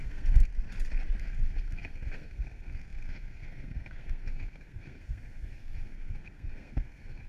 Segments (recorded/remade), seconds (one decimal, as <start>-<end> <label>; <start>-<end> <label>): 0.0-0.5 remade; 0.5-1.2 recorded; 1.2-7.3 remade